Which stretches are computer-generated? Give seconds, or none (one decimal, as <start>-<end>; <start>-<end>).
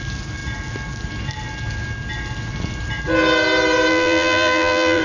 3.9-5.0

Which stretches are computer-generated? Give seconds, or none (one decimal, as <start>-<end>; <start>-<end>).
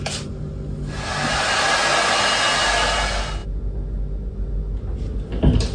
none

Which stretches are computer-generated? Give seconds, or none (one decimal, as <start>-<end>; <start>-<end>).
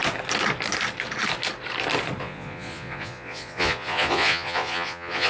2.2-5.3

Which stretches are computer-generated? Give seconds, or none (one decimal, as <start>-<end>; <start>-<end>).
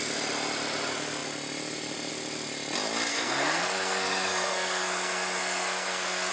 3.1-6.3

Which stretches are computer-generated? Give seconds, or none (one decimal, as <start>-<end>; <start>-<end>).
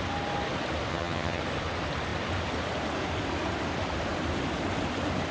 0.9-1.4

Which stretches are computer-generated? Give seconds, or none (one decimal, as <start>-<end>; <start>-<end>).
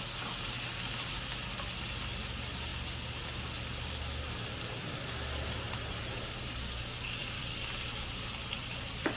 7.2-9.2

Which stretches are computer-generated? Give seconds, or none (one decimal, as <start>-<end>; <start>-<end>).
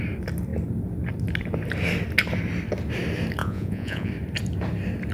3.4-4.1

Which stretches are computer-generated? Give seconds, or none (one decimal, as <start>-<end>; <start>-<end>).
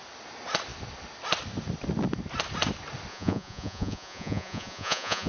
3.1-5.3